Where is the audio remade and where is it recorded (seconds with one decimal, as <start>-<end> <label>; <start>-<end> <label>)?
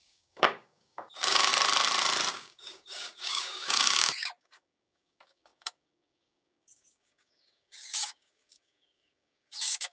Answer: 0.0-1.5 remade; 1.5-2.3 recorded; 2.3-9.9 remade